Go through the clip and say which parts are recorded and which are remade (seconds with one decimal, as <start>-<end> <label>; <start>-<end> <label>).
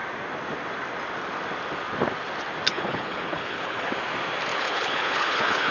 0.0-2.7 recorded; 2.7-3.9 remade; 3.9-4.5 recorded; 4.5-5.7 remade